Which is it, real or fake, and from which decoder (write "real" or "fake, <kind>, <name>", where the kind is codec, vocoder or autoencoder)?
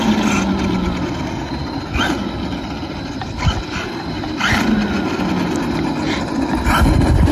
real